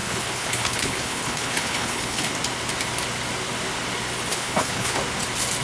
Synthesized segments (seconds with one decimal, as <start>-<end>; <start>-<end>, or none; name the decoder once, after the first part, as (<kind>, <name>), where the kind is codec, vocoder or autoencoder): 0.0-2.3 (codec, HILCodec); 4.3-5.0